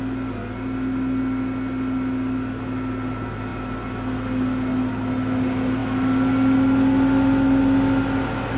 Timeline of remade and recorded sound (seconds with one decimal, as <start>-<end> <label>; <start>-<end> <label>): 0.0-8.6 recorded